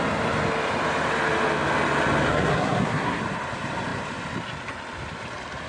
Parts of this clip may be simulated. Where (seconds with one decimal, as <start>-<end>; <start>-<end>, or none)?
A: 2.3-3.2